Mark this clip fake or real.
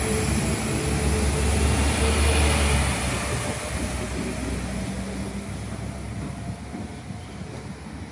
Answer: real